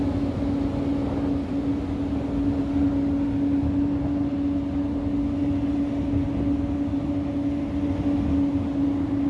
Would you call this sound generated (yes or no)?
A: no